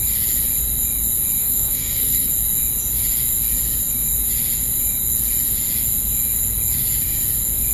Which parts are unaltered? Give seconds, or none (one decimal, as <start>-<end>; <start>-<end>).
0.0-1.4; 2.3-7.7